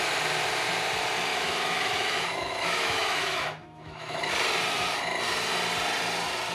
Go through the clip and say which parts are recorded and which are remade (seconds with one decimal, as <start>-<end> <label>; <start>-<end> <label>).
0.0-1.3 recorded; 1.3-4.2 remade; 4.2-6.5 recorded